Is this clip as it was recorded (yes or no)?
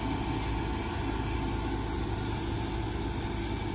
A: yes